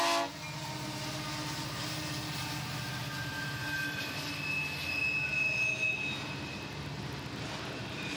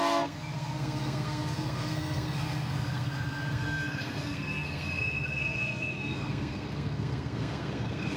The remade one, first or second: second